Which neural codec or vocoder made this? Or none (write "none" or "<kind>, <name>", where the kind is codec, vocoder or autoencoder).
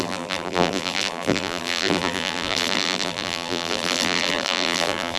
vocoder, BigVGAN v2